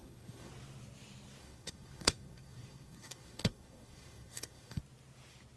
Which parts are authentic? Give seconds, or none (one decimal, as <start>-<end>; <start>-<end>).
0.5-1.4; 4.8-5.6

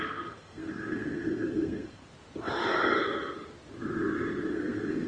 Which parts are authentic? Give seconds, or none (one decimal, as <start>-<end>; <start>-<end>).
2.0-4.5

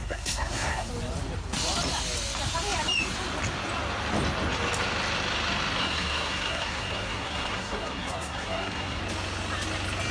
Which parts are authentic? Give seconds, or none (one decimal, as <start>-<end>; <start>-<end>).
0.9-5.8; 9.0-10.1

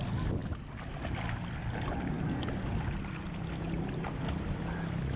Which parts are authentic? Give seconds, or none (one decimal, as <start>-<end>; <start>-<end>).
0.0-5.2

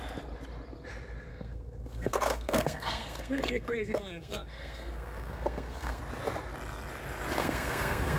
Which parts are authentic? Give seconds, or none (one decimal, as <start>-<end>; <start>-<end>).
0.0-1.3; 6.0-7.4

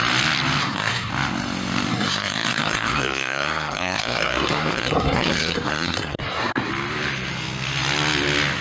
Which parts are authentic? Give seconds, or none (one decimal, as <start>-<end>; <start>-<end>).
0.0-0.6; 1.1-1.9; 6.7-8.6

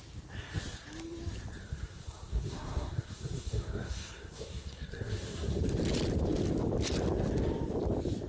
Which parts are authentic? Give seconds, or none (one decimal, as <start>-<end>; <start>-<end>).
0.0-1.6; 5.6-8.3

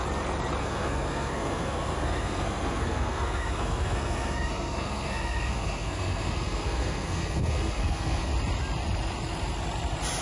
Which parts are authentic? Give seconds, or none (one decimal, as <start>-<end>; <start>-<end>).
0.0-0.6; 8.3-10.2